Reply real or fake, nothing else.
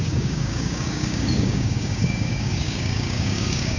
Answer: fake